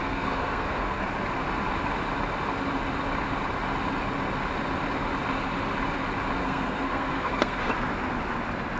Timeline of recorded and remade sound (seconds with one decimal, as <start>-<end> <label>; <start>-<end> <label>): 0.0-1.0 remade; 1.0-6.4 recorded; 6.4-7.7 remade; 7.7-8.8 recorded